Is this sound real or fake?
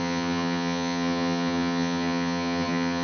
fake